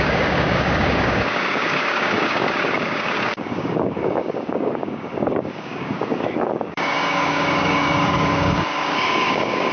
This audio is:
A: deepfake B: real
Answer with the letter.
A